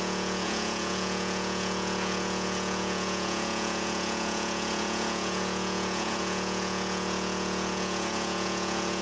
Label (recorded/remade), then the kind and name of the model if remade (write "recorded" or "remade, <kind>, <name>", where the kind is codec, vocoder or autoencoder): remade, vocoder, Vocos